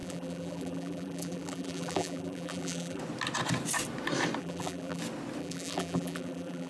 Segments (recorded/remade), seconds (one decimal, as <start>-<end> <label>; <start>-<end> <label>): 0.0-3.0 remade; 3.0-4.4 recorded; 4.4-5.0 remade; 5.0-5.4 recorded; 5.4-6.7 remade